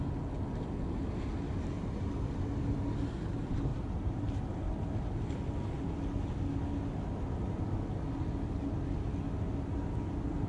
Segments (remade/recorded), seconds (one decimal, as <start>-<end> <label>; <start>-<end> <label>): 0.0-3.7 recorded; 3.7-4.4 remade; 4.4-10.5 recorded

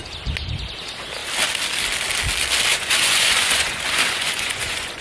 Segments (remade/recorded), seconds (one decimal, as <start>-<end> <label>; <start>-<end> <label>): 0.0-2.7 recorded; 2.7-5.0 remade